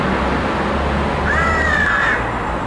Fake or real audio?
real